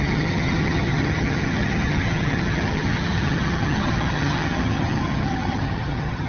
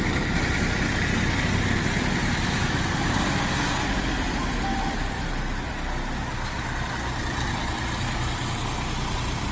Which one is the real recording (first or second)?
second